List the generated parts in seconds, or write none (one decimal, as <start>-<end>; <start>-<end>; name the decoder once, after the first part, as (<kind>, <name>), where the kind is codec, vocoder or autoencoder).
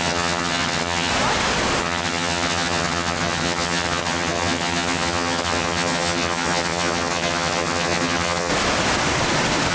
0.0-1.1 (vocoder, HiFi-GAN); 1.8-8.5